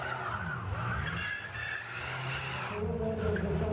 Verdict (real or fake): real